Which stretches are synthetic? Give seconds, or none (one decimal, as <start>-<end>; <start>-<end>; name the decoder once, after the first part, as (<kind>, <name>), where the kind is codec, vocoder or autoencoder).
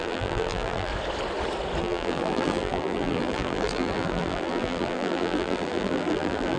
0.0-0.9 (vocoder, BigVGAN v2); 1.8-6.6